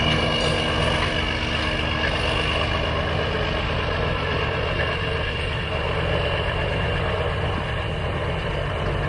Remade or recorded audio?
recorded